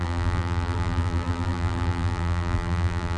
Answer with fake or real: fake